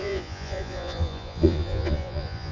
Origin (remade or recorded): remade